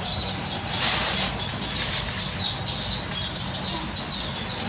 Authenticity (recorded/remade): recorded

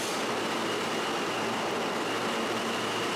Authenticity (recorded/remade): recorded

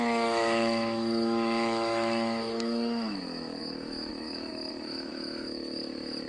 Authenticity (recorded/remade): remade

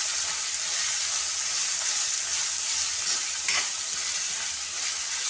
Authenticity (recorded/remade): recorded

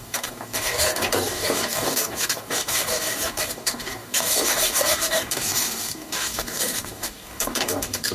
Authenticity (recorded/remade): remade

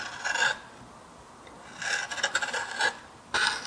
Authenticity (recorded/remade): recorded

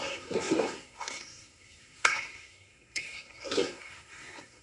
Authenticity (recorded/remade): remade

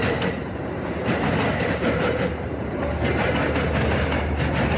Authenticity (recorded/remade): recorded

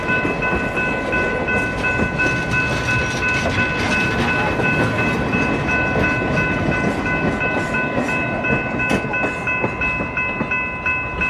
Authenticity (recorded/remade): recorded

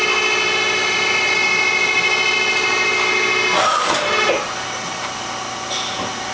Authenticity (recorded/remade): recorded